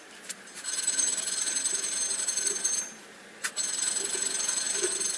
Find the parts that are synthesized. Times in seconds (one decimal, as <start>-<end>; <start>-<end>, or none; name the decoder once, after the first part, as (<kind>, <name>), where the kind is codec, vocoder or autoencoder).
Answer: 0.0-5.2 (vocoder, BigVGAN v2)